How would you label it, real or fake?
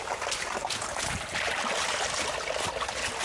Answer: real